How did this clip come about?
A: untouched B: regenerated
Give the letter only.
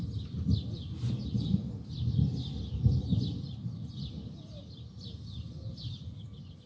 A